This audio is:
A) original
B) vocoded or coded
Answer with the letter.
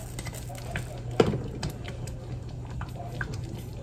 A